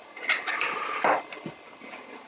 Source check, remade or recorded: recorded